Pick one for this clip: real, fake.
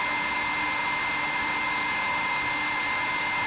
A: real